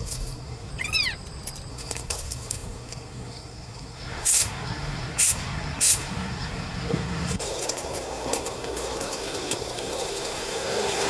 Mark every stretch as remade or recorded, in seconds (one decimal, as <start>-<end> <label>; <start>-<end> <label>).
0.0-0.7 remade; 0.7-1.7 recorded; 1.7-11.1 remade